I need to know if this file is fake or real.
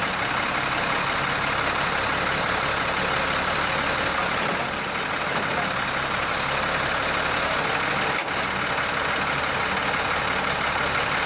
real